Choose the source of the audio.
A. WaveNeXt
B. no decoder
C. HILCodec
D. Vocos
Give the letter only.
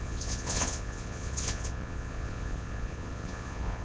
D